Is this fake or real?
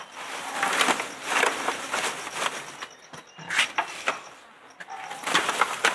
real